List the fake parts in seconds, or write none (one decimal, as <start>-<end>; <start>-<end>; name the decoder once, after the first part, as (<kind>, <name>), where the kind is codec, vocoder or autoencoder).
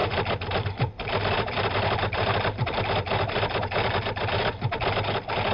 none